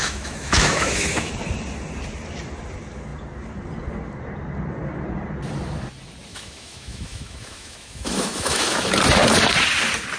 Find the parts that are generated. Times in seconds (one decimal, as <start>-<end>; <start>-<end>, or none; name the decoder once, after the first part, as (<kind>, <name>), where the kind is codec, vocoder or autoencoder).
0.0-1.3 (autoencoder, DAC-VAE); 6.3-8.9